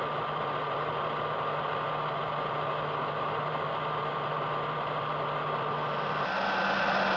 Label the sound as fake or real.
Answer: real